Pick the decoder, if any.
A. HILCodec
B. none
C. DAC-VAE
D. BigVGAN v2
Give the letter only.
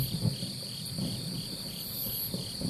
B